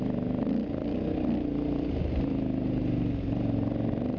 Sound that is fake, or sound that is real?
real